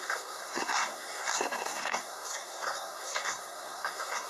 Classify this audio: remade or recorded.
remade